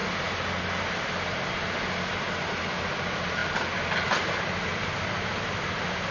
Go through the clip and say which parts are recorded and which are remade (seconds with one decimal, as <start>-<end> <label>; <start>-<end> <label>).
0.0-6.1 recorded